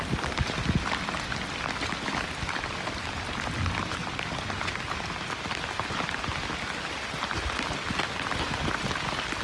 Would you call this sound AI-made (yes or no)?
no